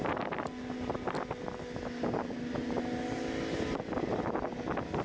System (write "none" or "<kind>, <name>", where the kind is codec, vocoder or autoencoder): none